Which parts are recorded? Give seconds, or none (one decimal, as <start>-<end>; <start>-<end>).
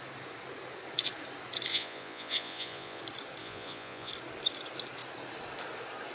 0.0-1.7; 3.0-3.4; 4.1-6.1